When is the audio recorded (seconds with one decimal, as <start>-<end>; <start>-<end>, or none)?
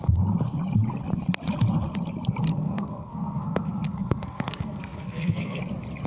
0.0-2.5; 5.6-6.1